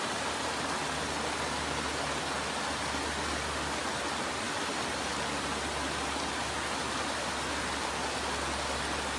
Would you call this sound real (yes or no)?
yes